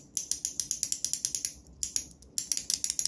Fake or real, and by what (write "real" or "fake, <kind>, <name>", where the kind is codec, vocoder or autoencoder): real